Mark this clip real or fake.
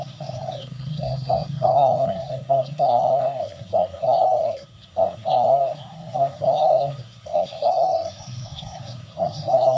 fake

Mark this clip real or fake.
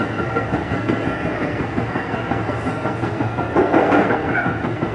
fake